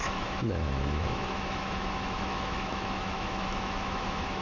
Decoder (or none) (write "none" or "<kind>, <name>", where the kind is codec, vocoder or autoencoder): autoencoder, DAC-VAE